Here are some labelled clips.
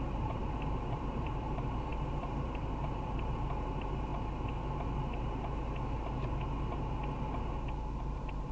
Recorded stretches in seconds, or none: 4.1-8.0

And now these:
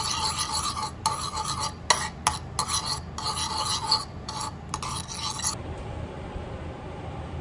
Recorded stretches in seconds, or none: 0.0-3.7; 4.4-7.4

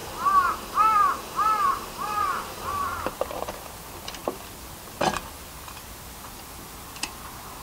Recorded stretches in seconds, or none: 0.0-7.6